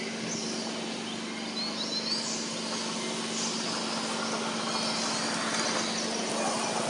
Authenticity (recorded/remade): recorded